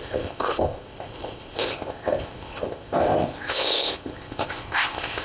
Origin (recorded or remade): remade